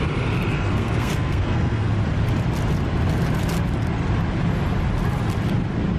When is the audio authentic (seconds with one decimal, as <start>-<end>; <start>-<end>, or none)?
0.0-0.5; 1.9-6.0